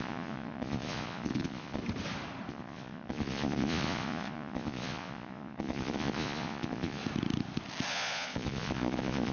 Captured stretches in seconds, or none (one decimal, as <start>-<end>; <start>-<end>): 1.8-2.5; 7.0-7.9